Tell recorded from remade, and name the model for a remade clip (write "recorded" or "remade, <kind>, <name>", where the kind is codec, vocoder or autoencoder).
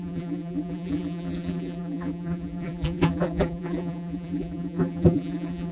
remade, vocoder, BigVGAN v2